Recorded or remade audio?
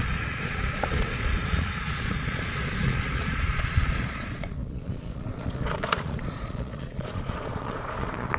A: remade